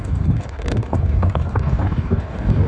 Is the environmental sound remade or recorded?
remade